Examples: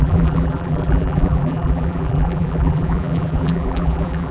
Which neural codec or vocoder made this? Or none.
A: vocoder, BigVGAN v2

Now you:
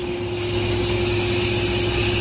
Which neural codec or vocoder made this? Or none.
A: none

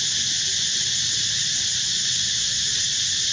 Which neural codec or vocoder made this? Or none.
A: none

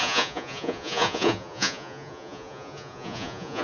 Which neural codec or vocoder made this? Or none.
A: vocoder, Vocos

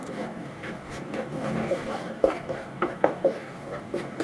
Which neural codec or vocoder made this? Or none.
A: codec, DAC